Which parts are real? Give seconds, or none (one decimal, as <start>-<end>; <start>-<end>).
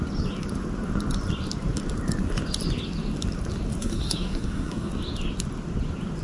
0.0-3.8; 4.9-6.2